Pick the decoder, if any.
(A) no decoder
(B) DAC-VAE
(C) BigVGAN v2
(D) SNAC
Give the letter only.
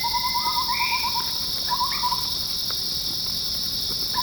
A